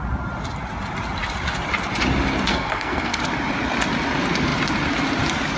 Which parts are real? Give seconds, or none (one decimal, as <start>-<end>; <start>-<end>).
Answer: 0.0-2.5; 3.2-5.6